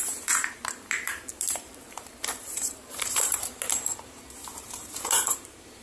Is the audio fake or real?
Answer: fake